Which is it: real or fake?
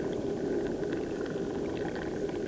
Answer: real